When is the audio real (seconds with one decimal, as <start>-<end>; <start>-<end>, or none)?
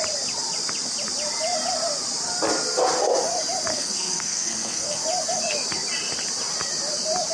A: 0.0-3.7; 5.0-7.3